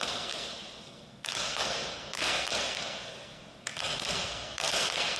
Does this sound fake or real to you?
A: fake